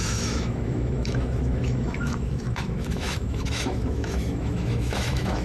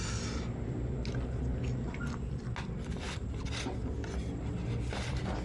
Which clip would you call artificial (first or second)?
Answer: first